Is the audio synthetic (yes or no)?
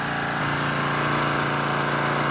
no